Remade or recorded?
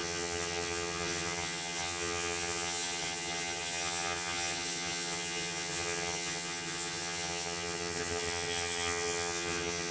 remade